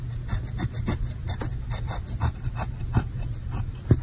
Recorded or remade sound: recorded